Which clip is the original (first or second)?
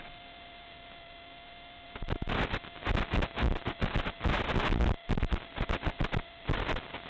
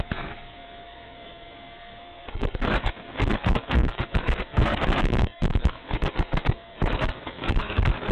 first